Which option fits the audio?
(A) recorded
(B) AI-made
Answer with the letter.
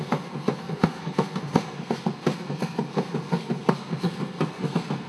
B